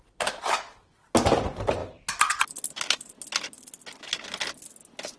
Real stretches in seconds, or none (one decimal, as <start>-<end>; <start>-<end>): 0.0-5.2